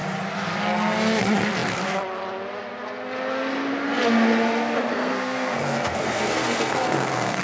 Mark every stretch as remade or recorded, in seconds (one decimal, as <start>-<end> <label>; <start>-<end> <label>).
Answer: 0.0-4.9 recorded; 4.9-7.4 remade